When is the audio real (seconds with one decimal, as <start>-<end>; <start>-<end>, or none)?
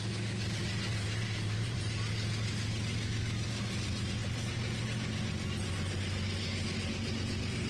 0.0-0.9; 1.8-7.7